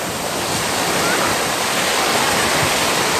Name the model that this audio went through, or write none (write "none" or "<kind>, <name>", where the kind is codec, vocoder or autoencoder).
none